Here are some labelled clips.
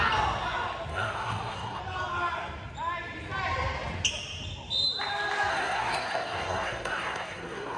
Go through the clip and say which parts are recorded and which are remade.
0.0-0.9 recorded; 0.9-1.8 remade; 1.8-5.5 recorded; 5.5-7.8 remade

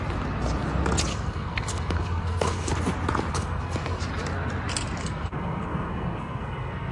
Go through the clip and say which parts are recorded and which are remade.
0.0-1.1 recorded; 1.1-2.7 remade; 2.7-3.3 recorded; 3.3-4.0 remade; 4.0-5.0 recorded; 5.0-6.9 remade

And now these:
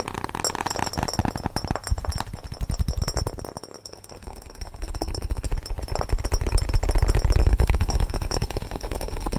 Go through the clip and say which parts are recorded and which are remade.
0.0-3.8 recorded; 3.8-5.5 remade; 5.5-7.4 recorded; 7.4-9.4 remade

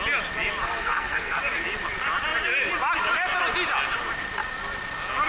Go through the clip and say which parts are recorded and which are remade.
0.0-0.6 recorded; 0.6-1.4 remade; 1.4-5.3 recorded

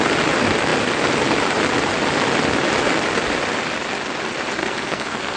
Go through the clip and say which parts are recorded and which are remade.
0.0-4.6 recorded; 4.6-5.4 remade

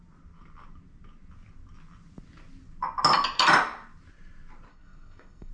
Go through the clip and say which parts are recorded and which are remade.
0.0-4.7 recorded; 4.7-5.5 remade

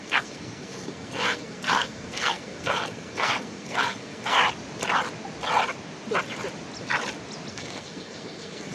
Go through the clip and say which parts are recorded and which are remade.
0.0-4.4 remade; 4.4-7.5 recorded; 7.5-8.7 remade